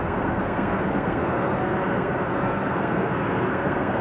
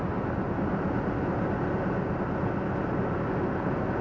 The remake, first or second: first